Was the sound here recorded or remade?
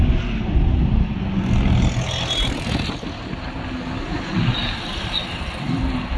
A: recorded